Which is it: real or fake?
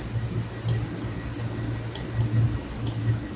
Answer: real